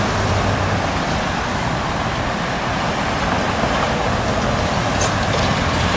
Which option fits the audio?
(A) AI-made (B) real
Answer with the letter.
B